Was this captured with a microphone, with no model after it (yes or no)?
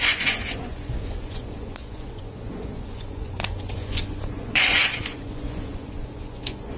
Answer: no